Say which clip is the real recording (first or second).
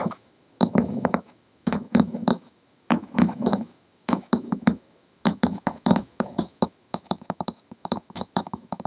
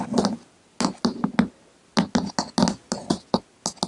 second